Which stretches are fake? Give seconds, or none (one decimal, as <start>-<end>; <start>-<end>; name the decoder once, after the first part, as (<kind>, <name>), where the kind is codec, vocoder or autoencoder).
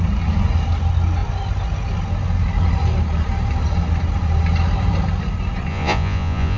5.7-6.6 (vocoder, Vocos)